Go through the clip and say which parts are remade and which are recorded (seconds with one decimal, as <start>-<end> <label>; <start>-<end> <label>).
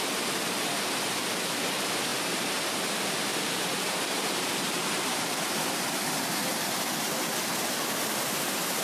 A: 0.0-2.1 recorded; 2.1-2.7 remade; 2.7-3.3 recorded; 3.3-5.4 remade; 5.4-8.8 recorded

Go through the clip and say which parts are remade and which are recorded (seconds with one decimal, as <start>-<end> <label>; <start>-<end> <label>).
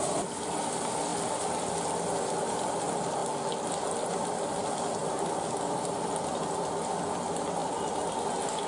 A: 0.0-8.7 recorded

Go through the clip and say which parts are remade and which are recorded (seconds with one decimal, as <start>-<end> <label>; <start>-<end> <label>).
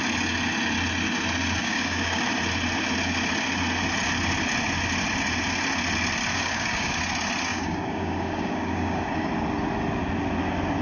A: 0.0-1.6 recorded; 1.6-2.2 remade; 2.2-6.3 recorded; 6.3-7.0 remade; 7.0-7.5 recorded; 7.5-9.3 remade; 9.3-10.8 recorded